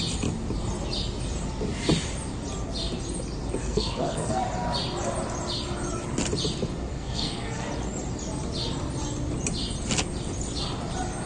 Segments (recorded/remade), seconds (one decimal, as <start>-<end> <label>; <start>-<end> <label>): 0.0-3.6 recorded; 3.6-4.4 remade; 4.4-6.9 recorded; 6.9-7.7 remade; 7.7-11.3 recorded